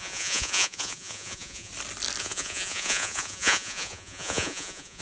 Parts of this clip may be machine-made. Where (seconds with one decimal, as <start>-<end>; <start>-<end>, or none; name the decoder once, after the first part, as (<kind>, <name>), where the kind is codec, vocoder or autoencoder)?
0.0-1.7 (vocoder, Vocos); 2.2-5.0